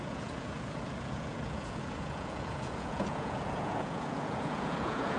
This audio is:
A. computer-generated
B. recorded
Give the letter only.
A